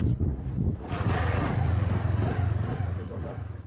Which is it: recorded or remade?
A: remade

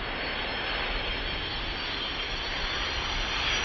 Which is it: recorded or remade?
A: recorded